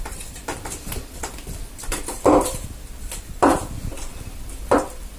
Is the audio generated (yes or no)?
yes